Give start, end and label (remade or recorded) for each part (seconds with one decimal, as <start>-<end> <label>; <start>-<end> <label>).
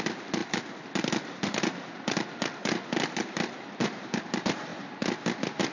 0.0-5.7 remade